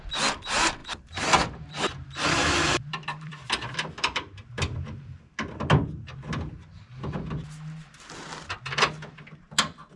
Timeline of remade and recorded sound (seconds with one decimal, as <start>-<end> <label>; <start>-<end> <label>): 0.0-0.8 recorded; 0.8-5.2 remade; 5.2-10.0 recorded